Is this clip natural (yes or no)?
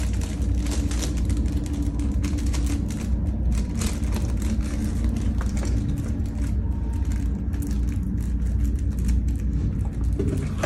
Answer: yes